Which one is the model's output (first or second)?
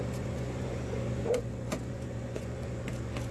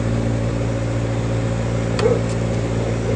first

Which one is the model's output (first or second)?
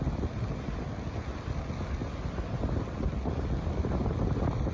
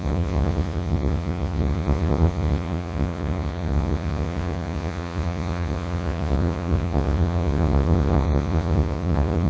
second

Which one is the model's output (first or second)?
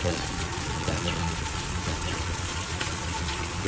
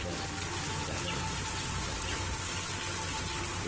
first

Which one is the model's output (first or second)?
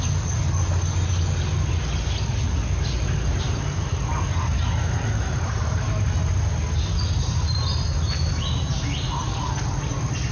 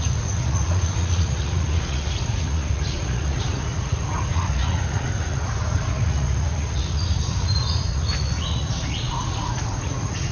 second